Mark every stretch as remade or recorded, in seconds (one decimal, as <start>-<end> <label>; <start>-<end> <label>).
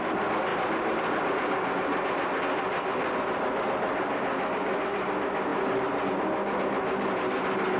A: 0.0-0.5 recorded; 0.5-2.4 remade; 2.4-5.5 recorded; 5.5-6.1 remade; 6.1-7.8 recorded